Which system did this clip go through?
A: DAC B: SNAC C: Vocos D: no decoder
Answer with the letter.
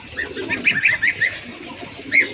D